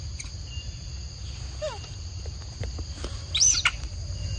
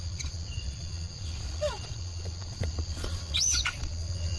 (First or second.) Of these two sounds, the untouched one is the first